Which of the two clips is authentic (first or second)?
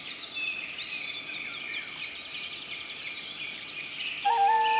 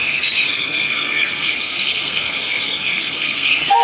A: first